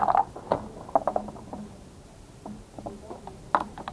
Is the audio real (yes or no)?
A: yes